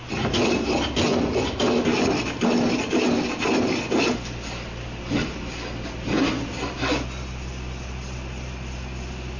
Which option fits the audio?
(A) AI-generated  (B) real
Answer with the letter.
B